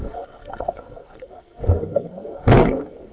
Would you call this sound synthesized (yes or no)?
yes